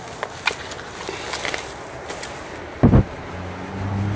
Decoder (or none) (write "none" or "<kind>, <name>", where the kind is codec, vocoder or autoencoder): none